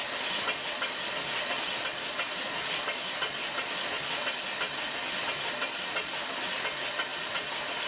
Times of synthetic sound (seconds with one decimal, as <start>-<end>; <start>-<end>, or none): 7.1-7.9